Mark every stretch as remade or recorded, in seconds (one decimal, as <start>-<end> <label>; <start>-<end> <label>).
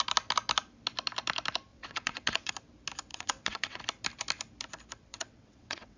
0.0-1.7 recorded; 1.7-2.5 remade; 2.5-3.1 recorded; 3.1-3.8 remade; 3.8-5.1 recorded; 5.1-6.0 remade